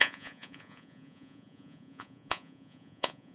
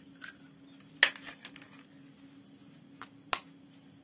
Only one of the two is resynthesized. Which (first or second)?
first